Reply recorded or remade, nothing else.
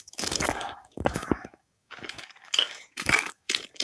remade